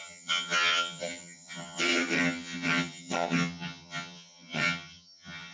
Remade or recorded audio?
remade